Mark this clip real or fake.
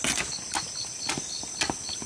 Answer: real